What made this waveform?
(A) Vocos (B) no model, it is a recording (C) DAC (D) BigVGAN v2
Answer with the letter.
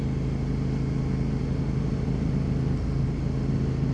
B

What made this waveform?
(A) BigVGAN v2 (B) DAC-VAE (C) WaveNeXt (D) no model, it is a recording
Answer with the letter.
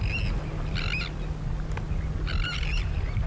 D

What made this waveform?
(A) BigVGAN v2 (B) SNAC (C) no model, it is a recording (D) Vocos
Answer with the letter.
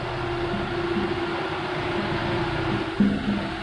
C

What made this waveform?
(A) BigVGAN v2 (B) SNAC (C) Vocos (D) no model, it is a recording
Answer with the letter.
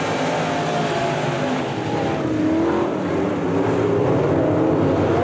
D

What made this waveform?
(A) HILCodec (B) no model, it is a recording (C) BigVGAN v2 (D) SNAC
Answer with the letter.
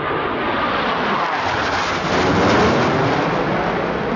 B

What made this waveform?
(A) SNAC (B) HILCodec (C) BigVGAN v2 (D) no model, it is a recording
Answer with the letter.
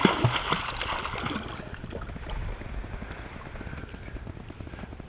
D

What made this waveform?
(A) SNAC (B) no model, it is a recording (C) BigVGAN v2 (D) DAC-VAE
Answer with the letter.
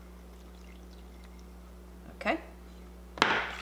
B